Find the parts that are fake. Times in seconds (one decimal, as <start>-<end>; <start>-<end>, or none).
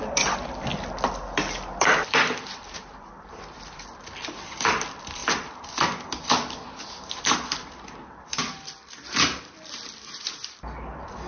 0.0-0.7; 1.8-5.2; 8.1-11.3